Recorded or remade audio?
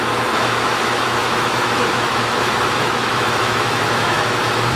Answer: remade